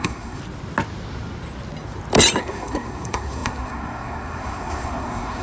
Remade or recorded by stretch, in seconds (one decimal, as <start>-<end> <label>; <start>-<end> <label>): 0.0-0.4 remade; 0.4-2.4 recorded; 2.4-5.4 remade